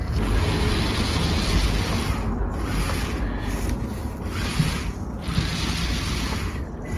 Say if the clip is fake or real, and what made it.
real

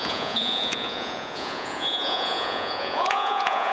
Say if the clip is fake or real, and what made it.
fake, vocoder, Vocos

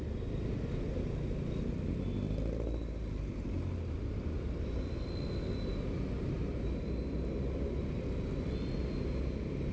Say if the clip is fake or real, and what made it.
real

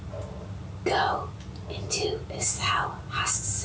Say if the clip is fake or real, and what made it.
real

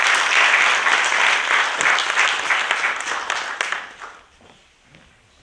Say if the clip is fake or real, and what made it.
real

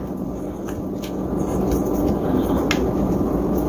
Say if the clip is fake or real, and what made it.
real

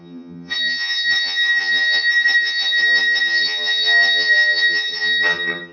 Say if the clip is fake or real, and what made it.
fake, vocoder, HiFi-GAN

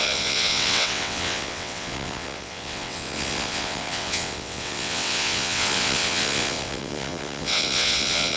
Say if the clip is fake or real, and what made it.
fake, vocoder, WaveNeXt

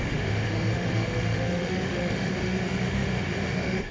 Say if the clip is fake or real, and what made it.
fake, autoencoder, DAC-VAE